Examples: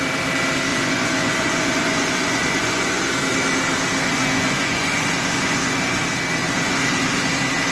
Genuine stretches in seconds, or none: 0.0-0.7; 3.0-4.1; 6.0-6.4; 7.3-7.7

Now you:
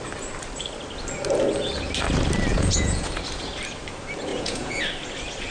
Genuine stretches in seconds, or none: 0.0-2.5; 3.1-4.3; 4.8-5.5

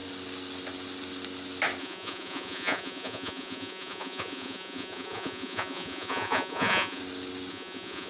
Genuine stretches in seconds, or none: 0.0-1.8; 7.0-7.5